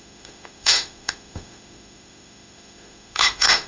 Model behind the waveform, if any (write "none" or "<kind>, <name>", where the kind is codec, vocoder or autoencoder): autoencoder, DAC-VAE